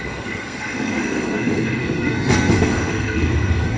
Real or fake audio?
fake